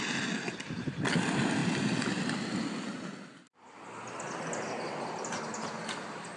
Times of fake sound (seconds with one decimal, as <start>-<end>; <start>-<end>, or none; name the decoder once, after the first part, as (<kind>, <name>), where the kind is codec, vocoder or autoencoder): none

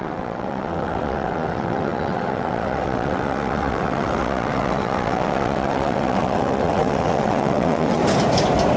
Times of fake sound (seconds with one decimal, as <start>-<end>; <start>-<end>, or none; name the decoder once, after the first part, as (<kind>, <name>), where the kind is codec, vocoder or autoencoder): 0.0-8.0 (vocoder, WaveNeXt)

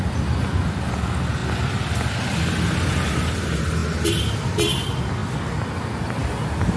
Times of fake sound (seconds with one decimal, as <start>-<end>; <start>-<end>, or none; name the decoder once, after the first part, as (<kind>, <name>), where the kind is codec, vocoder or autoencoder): none

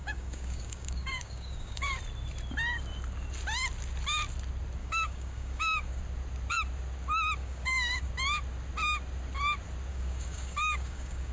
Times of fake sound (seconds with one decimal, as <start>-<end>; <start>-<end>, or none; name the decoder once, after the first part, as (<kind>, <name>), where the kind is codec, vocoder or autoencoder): 0.0-2.0 (codec, DAC); 4.8-6.0; 7.4-8.1; 9.9-11.3

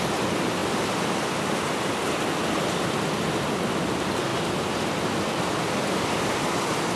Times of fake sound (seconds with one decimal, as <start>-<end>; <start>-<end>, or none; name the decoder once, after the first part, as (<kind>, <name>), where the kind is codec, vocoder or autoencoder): 0.0-4.3 (vocoder, BigVGAN v2); 5.2-7.0

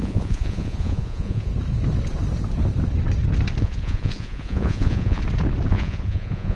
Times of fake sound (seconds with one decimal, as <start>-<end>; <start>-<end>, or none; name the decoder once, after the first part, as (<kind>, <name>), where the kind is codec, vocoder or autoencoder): 0.0-1.5 (vocoder, Vocos); 3.6-5.2; 5.7-6.6

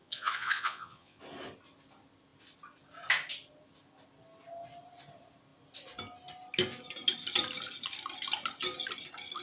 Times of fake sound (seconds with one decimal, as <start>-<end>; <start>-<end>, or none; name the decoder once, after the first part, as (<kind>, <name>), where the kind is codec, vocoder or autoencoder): 0.0-1.2 (vocoder, Vocos)